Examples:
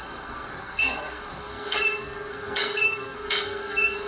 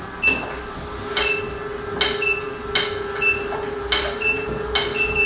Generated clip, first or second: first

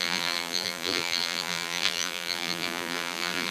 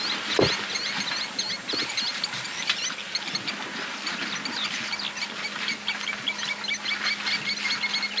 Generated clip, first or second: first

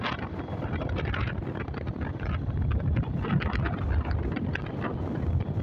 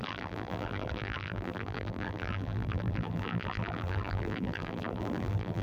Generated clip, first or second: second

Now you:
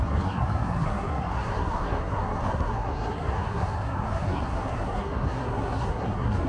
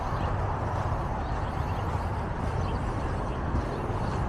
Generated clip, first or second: first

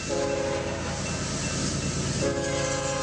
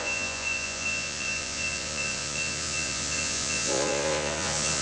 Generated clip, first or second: second